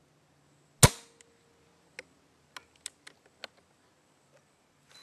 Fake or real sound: real